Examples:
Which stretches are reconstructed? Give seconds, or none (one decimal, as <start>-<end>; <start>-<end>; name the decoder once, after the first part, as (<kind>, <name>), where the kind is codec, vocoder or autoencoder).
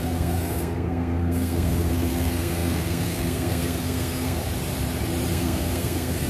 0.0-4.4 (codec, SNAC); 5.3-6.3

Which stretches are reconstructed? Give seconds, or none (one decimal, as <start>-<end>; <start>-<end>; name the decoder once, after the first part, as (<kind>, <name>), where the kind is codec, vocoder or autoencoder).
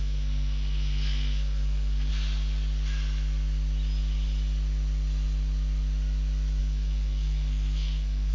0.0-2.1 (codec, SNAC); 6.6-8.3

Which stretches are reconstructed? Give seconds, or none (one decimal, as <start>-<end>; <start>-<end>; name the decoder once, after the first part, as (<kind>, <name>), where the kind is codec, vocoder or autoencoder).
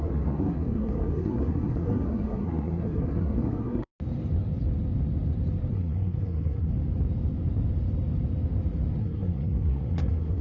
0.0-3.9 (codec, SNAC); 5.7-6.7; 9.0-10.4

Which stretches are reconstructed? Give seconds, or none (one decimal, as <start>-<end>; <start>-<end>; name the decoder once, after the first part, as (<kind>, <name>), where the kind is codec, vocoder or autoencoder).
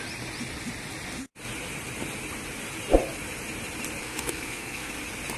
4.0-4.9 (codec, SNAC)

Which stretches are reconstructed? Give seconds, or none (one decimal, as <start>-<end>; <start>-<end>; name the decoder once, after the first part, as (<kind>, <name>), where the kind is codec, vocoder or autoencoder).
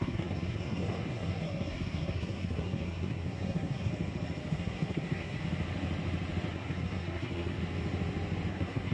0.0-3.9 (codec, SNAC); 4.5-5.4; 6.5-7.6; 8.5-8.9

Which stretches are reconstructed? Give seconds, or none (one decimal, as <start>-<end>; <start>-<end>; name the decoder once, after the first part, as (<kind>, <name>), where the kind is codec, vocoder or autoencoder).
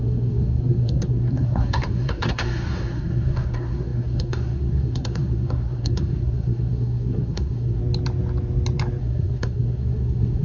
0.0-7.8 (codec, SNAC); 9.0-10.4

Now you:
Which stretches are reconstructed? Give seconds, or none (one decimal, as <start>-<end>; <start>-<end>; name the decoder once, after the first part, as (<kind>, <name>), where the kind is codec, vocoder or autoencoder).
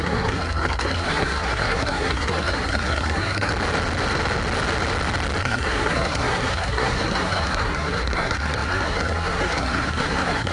0.0-3.5 (codec, SNAC); 5.4-10.5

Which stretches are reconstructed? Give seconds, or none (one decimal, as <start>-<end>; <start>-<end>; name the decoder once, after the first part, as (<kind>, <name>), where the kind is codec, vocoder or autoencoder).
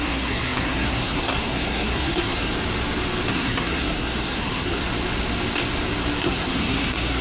0.0-2.5 (codec, SNAC); 3.3-4.8; 6.2-7.2